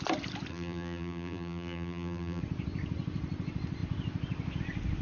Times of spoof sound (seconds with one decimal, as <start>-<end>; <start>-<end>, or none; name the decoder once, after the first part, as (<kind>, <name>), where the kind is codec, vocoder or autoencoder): 0.5-2.4 (vocoder, BigVGAN v2)